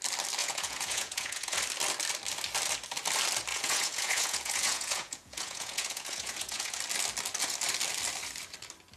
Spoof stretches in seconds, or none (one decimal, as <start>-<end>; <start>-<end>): 0.4-1.6; 3.5-6.8